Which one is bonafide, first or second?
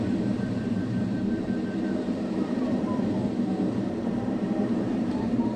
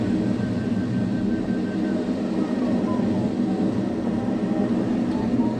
second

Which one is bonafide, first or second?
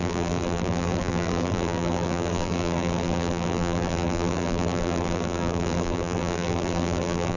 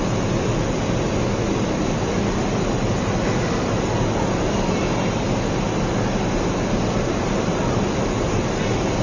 second